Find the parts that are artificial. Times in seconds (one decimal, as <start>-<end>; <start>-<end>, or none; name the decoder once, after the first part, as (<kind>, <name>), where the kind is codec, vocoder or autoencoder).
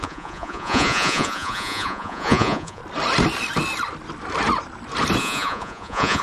0.0-2.8 (vocoder, Vocos); 5.2-6.2